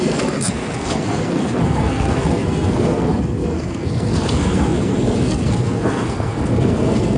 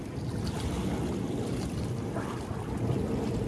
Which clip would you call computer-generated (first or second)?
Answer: first